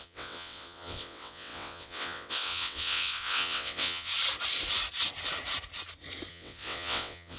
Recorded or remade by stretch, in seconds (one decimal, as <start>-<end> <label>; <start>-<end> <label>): 0.0-4.1 remade; 4.1-6.3 recorded; 6.3-7.4 remade